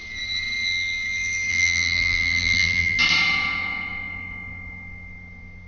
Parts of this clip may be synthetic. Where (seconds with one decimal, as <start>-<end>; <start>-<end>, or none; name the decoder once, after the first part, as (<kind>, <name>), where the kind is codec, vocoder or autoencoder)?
1.5-3.0 (vocoder, BigVGAN v2)

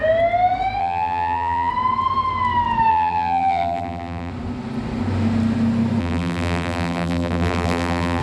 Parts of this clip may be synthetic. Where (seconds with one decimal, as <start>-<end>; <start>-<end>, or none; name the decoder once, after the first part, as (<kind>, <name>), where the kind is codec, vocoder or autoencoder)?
0.8-1.7 (vocoder, BigVGAN v2); 2.9-4.3; 6.0-8.2

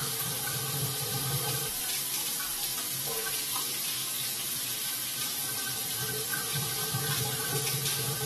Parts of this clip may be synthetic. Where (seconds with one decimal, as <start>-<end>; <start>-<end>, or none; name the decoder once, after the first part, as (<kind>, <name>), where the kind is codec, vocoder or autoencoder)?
0.9-1.7 (vocoder, BigVGAN v2); 2.7-3.3; 5.0-7.2

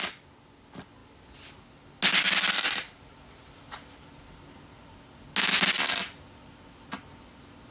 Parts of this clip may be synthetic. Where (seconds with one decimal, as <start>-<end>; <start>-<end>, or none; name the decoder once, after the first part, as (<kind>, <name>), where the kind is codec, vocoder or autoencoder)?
none

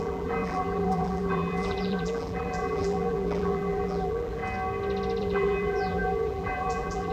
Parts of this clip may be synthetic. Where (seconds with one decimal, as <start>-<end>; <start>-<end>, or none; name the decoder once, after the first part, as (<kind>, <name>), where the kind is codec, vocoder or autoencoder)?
0.0-4.4 (vocoder, BigVGAN v2); 5.2-7.1

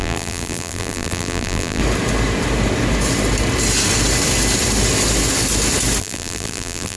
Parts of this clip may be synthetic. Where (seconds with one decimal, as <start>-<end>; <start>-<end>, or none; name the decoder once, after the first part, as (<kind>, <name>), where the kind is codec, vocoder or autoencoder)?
0.0-1.8 (vocoder, BigVGAN v2); 6.0-7.0